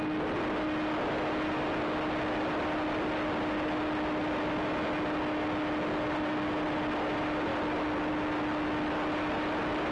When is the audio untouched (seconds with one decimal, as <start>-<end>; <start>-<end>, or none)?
0.0-9.9